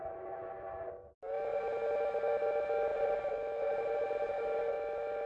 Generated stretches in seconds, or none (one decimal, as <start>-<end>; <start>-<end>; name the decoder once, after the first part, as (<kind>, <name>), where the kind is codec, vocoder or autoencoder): none